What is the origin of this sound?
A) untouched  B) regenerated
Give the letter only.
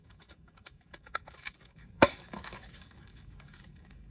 B